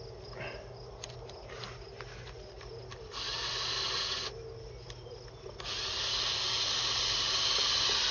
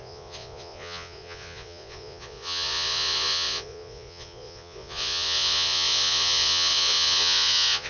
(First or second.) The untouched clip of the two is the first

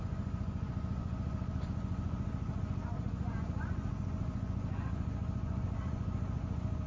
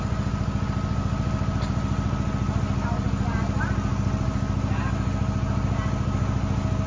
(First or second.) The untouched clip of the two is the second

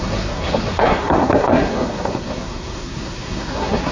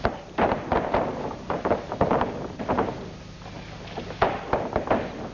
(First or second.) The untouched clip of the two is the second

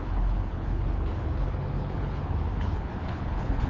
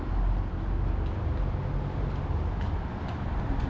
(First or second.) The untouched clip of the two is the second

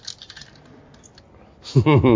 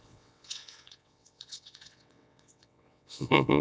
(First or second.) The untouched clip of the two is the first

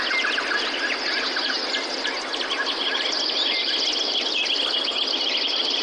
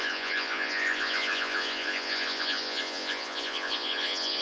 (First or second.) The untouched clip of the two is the first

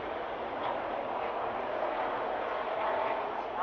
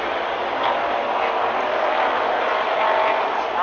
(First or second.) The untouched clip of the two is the second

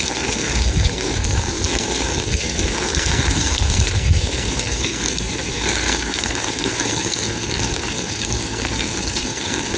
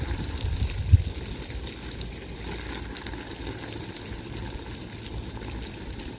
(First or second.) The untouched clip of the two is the second